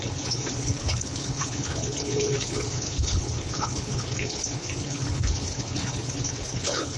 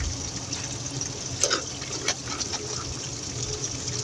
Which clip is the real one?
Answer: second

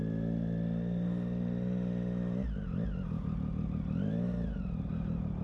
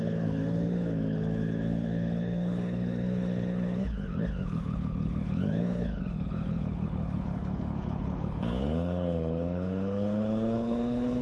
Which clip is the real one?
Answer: first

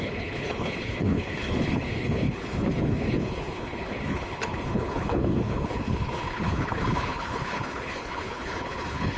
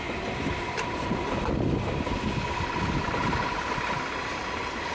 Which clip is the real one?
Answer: second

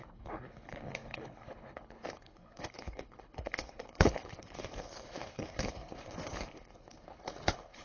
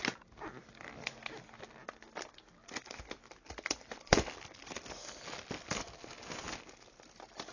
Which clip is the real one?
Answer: second